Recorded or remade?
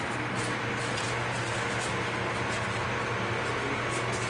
recorded